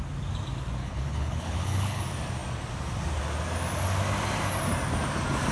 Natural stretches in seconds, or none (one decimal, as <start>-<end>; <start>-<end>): 0.0-0.8; 2.0-5.5